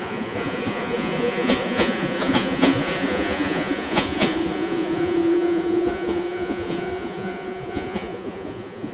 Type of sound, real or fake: fake